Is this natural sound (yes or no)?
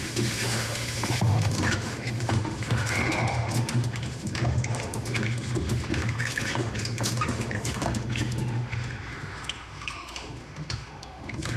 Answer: no